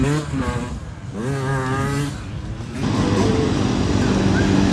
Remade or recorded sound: recorded